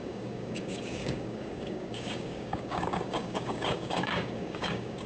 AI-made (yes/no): yes